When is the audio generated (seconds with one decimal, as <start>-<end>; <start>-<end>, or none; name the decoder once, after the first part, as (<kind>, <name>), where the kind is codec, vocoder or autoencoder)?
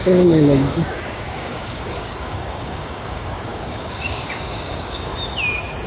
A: 0.0-5.1 (codec, DAC)